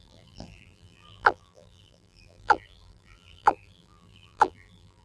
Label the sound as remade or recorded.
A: remade